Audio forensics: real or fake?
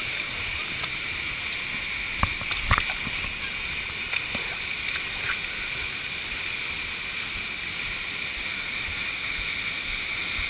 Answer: real